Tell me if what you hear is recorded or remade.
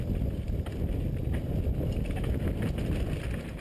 recorded